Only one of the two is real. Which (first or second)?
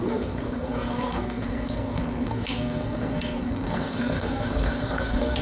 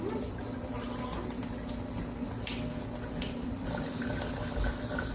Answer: second